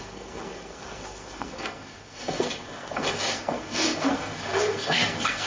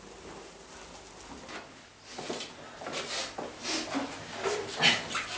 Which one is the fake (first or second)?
first